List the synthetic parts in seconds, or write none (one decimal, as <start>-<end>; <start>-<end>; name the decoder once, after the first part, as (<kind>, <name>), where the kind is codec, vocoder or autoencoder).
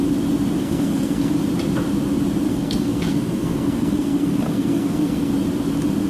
0.6-1.3 (codec, SNAC); 2.5-5.3